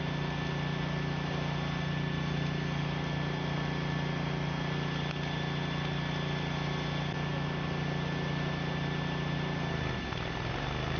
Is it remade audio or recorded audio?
recorded